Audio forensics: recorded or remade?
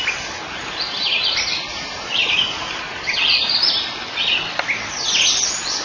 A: recorded